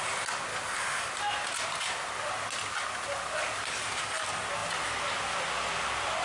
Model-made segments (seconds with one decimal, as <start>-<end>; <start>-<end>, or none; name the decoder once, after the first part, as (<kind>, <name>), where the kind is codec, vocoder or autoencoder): 0.5-1.1 (codec, DAC)